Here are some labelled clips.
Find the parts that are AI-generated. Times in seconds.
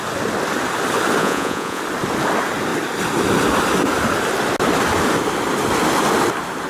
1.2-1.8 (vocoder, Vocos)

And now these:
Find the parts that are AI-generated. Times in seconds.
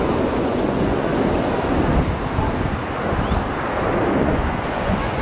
0.0-1.1 (vocoder, Vocos); 4.2-5.2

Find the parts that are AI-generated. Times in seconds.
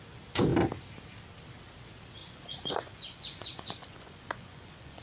2.2-5.0 (vocoder, Vocos)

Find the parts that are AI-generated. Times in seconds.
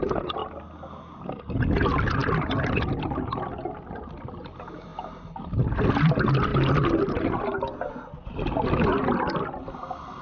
none